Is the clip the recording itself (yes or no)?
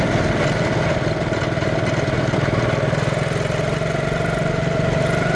yes